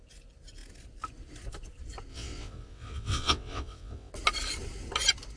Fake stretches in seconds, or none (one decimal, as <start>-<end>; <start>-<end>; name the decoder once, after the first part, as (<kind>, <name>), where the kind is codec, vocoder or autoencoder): 2.1-4.1 (vocoder, WaveNeXt)